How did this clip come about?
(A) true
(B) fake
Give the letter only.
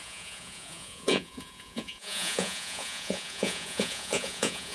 B